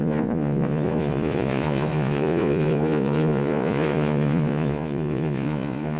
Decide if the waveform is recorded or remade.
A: remade